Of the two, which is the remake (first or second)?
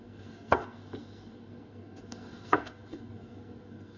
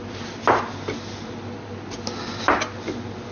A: first